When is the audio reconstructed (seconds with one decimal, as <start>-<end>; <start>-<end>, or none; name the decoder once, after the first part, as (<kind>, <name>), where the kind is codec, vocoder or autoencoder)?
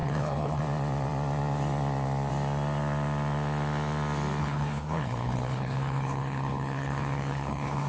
0.0-0.6 (codec, HILCodec); 4.4-7.9